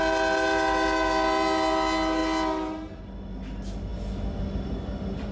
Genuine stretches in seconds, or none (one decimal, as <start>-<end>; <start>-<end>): 0.0-5.3